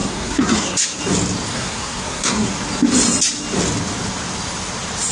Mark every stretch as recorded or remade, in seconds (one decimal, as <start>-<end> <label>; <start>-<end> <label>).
0.0-1.0 remade; 1.0-1.5 recorded; 1.5-2.5 remade; 2.5-5.1 recorded